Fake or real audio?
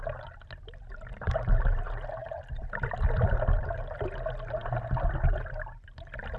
real